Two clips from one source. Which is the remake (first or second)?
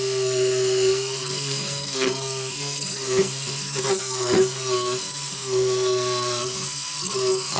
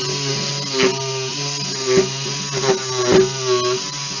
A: first